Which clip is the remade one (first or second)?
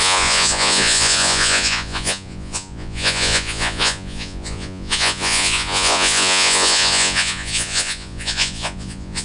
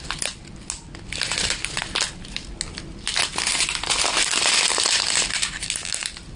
first